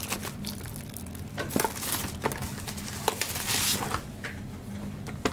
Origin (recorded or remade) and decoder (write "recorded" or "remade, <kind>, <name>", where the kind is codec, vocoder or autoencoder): recorded